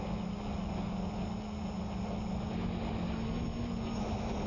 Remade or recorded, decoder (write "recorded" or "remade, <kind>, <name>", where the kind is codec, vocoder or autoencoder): recorded